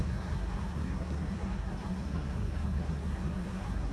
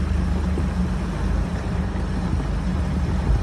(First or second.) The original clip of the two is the second